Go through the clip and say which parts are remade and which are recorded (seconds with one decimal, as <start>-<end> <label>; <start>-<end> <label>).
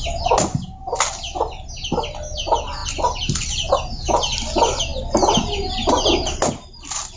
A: 0.0-7.2 recorded